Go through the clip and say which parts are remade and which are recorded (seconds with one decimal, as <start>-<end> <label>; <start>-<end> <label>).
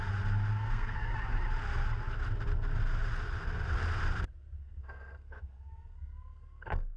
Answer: 0.0-0.5 recorded; 0.5-1.1 remade; 1.1-4.6 recorded; 4.6-7.0 remade